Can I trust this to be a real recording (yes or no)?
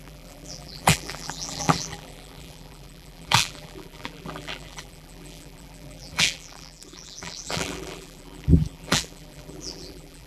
no